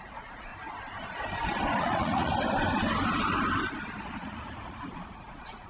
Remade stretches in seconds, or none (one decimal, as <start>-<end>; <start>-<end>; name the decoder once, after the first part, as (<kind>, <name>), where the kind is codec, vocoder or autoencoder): 0.0-0.5 (vocoder, Vocos); 1.8-2.3; 4.0-5.7